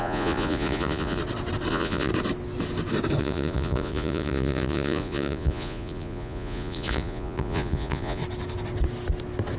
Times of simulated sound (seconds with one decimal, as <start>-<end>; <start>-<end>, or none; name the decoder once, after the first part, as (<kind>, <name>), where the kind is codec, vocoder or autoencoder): 0.0-1.2 (vocoder, Vocos); 1.7-2.1; 3.2-8.2